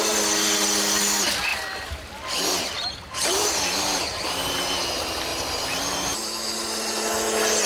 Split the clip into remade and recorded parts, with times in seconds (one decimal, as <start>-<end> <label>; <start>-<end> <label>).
0.0-1.5 recorded; 1.5-4.3 remade; 4.3-7.7 recorded